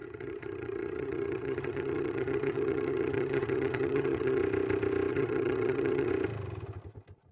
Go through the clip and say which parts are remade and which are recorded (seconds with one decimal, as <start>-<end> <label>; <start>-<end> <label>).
0.0-4.4 remade; 4.4-5.1 recorded; 5.1-6.1 remade; 6.1-7.3 recorded